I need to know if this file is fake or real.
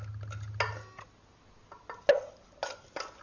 real